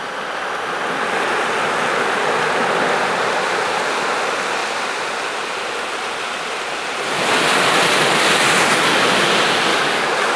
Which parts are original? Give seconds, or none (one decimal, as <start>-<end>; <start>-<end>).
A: 0.0-9.7